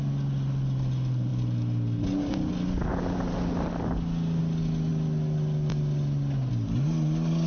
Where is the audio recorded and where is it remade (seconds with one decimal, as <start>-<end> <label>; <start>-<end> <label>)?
0.0-7.5 recorded